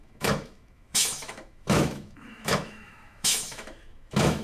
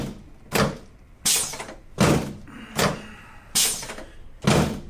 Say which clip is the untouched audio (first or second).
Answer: second